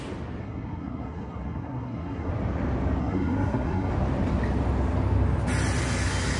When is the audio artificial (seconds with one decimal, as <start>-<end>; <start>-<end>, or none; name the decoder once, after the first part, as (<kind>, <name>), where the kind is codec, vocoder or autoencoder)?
0.4-2.3 (codec, SNAC); 3.0-3.9